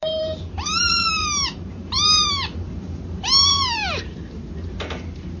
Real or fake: fake